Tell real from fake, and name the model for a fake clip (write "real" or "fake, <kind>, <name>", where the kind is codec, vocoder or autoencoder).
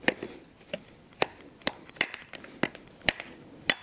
real